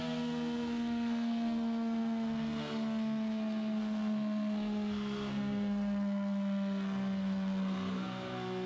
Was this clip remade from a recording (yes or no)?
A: yes